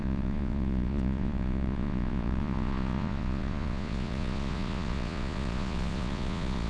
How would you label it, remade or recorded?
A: remade